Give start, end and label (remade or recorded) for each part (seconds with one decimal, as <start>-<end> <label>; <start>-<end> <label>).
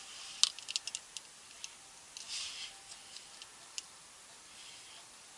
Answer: 0.0-3.5 recorded; 3.5-4.4 remade; 4.4-5.4 recorded